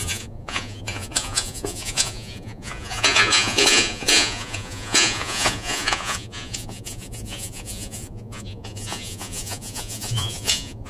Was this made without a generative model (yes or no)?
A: no